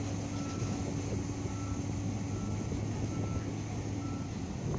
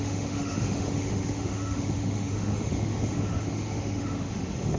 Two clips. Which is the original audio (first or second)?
first